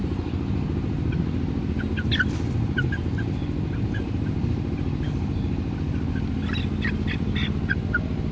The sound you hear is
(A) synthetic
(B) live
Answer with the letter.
B